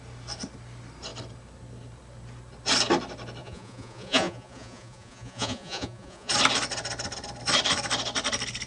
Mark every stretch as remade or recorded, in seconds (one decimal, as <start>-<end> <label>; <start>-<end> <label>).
0.0-3.4 recorded; 3.4-6.3 remade; 6.3-8.7 recorded